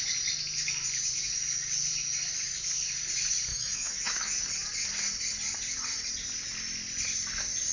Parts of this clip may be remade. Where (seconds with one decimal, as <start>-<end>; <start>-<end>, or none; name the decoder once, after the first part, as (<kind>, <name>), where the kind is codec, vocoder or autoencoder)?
3.5-4.3 (autoencoder, DAC-VAE)